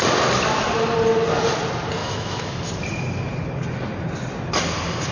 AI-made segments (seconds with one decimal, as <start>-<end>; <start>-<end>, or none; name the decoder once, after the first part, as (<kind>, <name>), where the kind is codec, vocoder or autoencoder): 2.0-2.7 (autoencoder, DAC-VAE)